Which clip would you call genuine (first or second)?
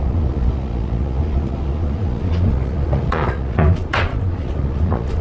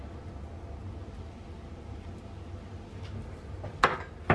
second